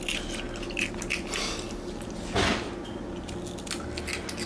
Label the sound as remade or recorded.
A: recorded